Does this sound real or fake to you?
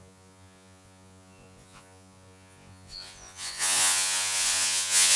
fake